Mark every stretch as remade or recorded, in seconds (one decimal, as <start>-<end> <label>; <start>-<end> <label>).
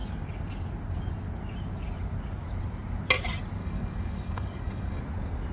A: 0.0-3.6 recorded; 3.6-5.0 remade; 5.0-5.5 recorded